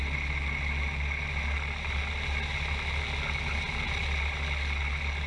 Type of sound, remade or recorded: recorded